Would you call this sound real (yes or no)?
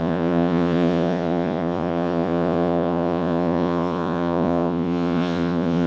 no